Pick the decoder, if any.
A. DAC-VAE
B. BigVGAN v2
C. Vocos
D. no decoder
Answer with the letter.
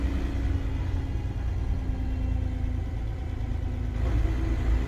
D